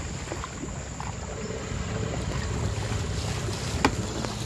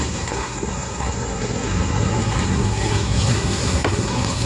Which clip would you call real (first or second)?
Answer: first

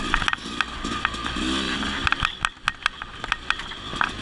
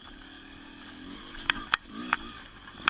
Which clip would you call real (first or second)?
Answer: first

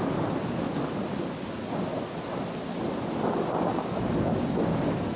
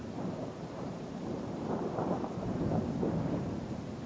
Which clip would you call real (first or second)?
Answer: first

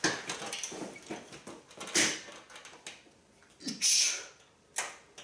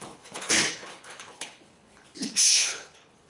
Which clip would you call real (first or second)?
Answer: first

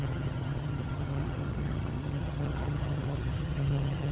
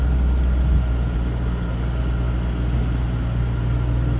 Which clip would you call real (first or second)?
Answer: second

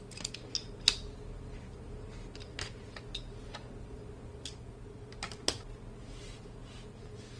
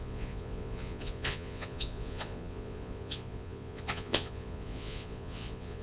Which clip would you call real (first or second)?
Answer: first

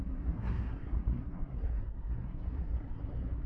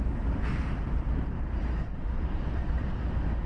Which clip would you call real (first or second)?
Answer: second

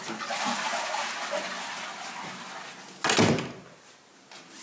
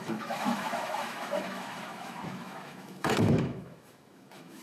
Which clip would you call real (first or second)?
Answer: first